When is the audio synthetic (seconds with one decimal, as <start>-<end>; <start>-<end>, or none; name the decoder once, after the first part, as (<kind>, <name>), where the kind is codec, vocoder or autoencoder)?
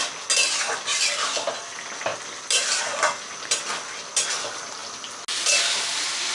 none